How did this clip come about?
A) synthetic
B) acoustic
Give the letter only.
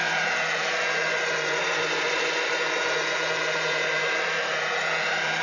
A